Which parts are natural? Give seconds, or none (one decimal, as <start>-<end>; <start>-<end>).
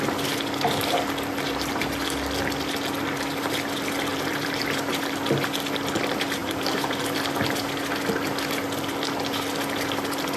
0.0-4.1; 4.8-6.4; 7.0-10.4